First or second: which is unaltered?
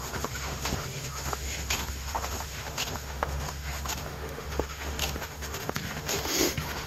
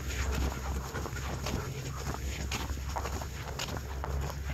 second